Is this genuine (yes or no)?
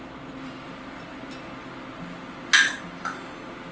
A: yes